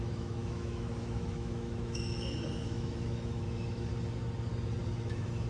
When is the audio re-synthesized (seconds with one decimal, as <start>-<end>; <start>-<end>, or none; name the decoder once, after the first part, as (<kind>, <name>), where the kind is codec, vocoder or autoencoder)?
0.0-3.9 (autoencoder, DAC-VAE); 4.8-5.5